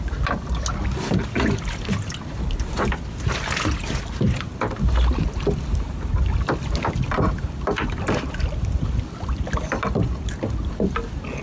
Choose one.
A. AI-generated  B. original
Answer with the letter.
B